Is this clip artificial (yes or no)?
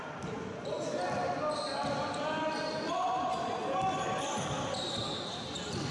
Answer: no